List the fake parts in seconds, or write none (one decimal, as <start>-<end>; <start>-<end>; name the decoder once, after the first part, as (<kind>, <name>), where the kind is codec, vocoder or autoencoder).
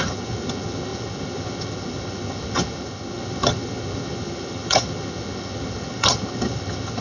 0.0-7.0 (vocoder, HiFi-GAN)